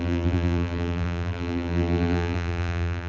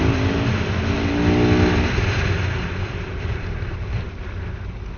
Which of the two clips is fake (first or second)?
first